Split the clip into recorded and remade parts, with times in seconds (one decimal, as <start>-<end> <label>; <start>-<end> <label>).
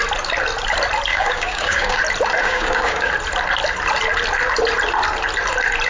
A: 0.0-1.1 recorded; 1.1-2.0 remade; 2.0-2.4 recorded; 2.4-3.1 remade; 3.1-5.9 recorded